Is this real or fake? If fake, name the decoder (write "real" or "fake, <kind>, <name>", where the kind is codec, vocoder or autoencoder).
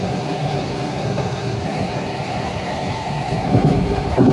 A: fake, codec, SNAC